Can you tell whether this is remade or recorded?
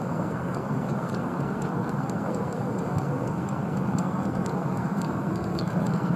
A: remade